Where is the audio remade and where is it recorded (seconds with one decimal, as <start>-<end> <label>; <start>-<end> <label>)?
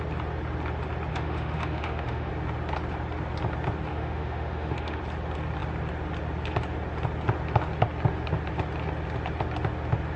0.0-1.1 recorded; 1.1-2.3 remade; 2.3-3.9 recorded; 3.9-5.0 remade; 5.0-10.2 recorded